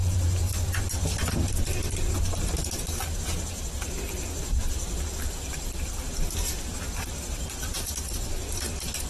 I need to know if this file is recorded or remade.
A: remade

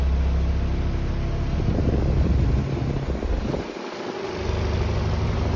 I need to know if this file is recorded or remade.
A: recorded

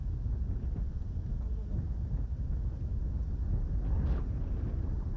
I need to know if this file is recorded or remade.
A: recorded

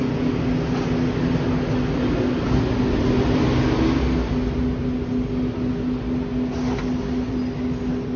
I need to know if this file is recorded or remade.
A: recorded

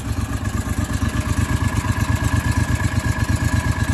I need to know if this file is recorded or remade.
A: recorded